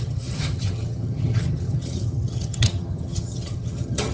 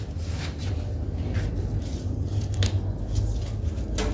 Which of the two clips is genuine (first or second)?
second